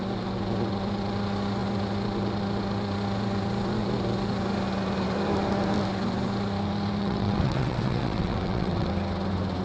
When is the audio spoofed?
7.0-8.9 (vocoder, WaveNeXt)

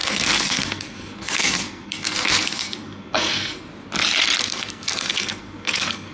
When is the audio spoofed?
0.0-3.7 (codec, SNAC); 4.4-6.1

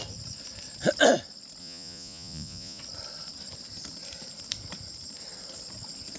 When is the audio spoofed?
1.6-2.8 (vocoder, Vocos)